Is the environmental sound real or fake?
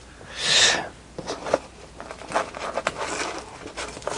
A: real